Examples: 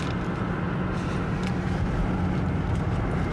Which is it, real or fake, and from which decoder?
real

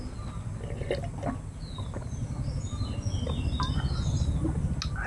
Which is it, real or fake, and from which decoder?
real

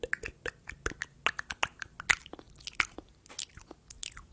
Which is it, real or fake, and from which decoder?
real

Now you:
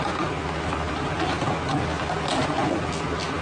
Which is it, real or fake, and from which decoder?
real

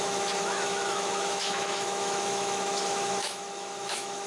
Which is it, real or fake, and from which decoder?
fake, autoencoder, DAC-VAE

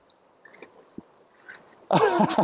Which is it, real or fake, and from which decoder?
real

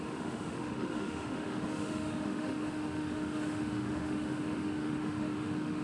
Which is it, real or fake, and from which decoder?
fake, autoencoder, DAC-VAE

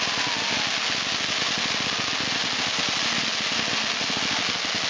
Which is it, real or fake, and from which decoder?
real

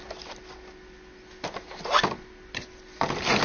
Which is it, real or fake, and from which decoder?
real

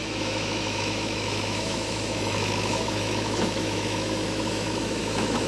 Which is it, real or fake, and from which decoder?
fake, autoencoder, DAC-VAE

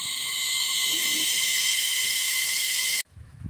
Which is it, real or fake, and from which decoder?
fake, autoencoder, DAC-VAE